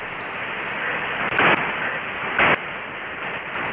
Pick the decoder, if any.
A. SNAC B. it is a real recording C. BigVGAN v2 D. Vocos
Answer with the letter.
B